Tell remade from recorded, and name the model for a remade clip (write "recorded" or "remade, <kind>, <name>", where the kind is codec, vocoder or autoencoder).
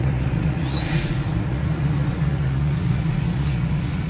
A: remade, vocoder, Vocos